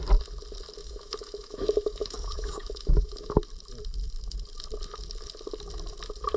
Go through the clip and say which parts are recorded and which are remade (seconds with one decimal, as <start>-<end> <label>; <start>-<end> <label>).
0.0-0.8 recorded; 0.8-3.3 remade; 3.3-6.4 recorded